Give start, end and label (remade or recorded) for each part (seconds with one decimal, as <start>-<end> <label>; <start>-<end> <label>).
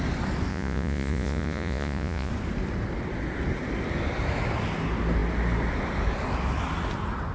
0.0-0.5 recorded; 0.5-2.3 remade; 2.3-7.3 recorded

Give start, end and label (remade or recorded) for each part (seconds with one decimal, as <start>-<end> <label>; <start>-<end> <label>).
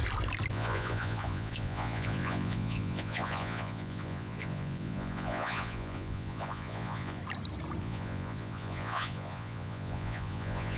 0.0-0.5 recorded; 0.5-7.2 remade; 7.2-7.8 recorded; 7.8-10.8 remade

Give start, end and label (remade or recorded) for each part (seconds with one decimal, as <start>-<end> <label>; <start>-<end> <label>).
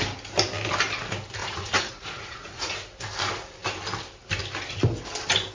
0.0-1.4 recorded; 1.4-2.7 remade; 2.7-5.5 recorded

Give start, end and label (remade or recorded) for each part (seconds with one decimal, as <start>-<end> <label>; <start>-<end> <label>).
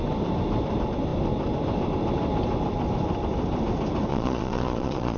0.0-4.1 recorded; 4.1-5.2 remade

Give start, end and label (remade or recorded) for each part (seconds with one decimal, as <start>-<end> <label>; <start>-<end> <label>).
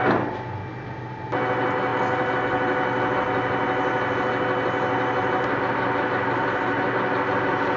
0.0-7.8 recorded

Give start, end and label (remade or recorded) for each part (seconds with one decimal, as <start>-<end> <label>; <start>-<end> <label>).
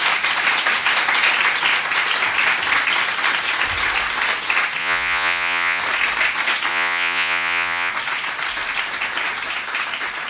0.0-4.8 recorded; 4.8-5.8 remade; 5.8-6.7 recorded; 6.7-7.9 remade; 7.9-10.3 recorded